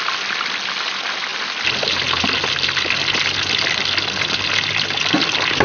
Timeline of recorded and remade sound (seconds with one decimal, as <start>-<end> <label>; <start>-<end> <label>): 0.0-5.6 recorded